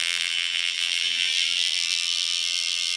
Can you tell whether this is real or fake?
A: fake